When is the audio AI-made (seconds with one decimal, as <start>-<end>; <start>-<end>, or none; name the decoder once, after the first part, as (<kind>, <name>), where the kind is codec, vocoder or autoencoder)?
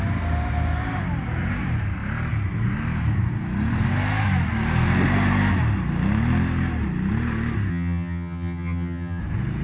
7.7-9.2 (vocoder, HiFi-GAN)